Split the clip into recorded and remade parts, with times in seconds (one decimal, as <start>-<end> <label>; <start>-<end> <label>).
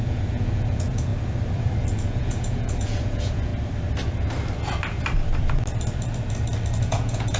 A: 0.0-1.1 remade; 1.1-1.9 recorded; 1.9-3.5 remade; 3.5-6.8 recorded; 6.8-7.4 remade